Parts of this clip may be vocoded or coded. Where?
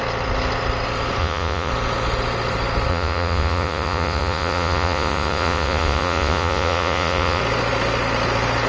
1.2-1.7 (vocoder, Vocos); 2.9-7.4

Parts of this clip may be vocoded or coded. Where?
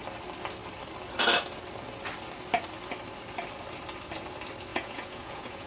4.7-5.7 (vocoder, Vocos)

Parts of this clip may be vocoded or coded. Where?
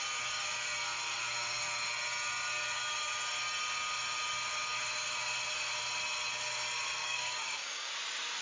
7.0-7.9 (codec, DAC)